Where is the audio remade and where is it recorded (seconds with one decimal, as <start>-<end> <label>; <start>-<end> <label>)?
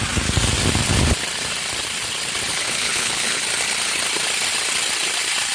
0.0-2.5 recorded; 2.5-3.4 remade; 3.4-5.5 recorded